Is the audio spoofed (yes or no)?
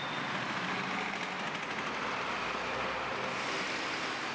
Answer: no